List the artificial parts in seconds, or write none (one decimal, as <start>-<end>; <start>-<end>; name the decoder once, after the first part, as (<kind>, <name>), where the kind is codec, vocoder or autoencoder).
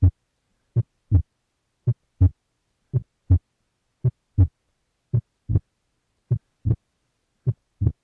6.4-7.2 (vocoder, BigVGAN v2)